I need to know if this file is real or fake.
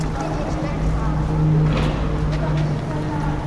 real